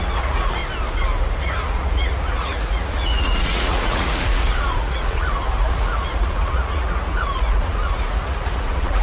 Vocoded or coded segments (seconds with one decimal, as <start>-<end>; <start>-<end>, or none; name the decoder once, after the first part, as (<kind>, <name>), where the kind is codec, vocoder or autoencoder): 0.0-0.6 (vocoder, Vocos); 1.4-9.0